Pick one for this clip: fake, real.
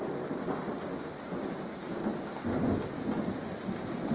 real